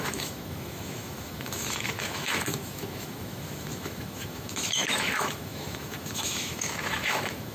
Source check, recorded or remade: remade